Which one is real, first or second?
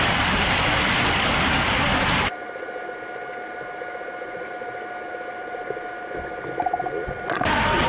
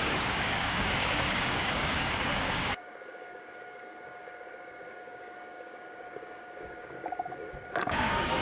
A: first